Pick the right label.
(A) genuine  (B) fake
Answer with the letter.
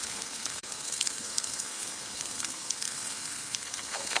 B